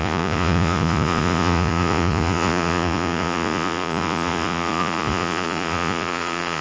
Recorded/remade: remade